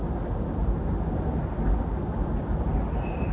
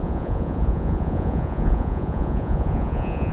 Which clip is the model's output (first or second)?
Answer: second